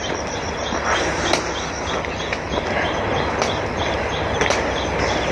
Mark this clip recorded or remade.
recorded